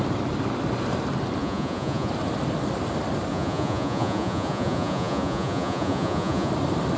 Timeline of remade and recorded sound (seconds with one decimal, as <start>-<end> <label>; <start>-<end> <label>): 0.0-1.4 recorded; 1.4-2.1 remade; 2.1-3.3 recorded; 3.3-6.5 remade; 6.5-7.0 recorded